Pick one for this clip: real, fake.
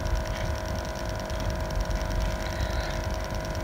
real